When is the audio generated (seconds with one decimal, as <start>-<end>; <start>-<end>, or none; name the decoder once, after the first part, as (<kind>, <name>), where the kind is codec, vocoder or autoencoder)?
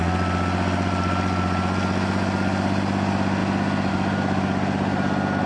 none